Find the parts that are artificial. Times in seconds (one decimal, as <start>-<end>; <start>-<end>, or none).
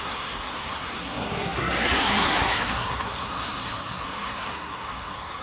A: 0.0-5.4